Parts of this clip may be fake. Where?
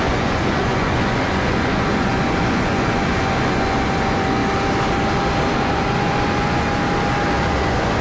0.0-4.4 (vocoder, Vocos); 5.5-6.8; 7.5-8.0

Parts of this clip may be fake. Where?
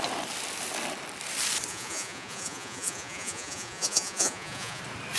1.7-4.8 (vocoder, Vocos)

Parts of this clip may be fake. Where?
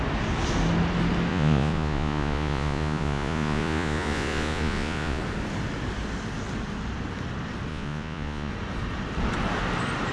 1.3-5.2 (vocoder, Vocos); 7.7-8.5